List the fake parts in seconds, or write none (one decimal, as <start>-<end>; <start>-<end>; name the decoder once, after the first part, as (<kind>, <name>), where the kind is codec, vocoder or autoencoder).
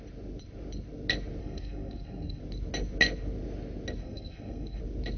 1.4-2.4 (codec, SNAC); 4.0-4.8